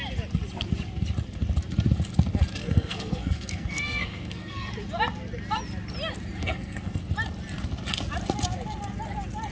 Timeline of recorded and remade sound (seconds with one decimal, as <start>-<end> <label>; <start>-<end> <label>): 0.0-2.6 recorded; 2.6-4.7 remade; 4.7-6.4 recorded; 6.4-7.0 remade; 7.0-9.5 recorded